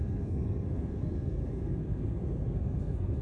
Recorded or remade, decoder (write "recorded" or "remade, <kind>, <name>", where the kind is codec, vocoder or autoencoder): remade, codec, SNAC